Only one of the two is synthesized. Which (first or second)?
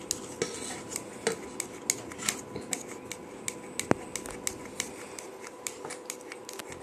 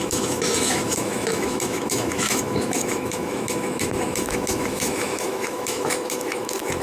second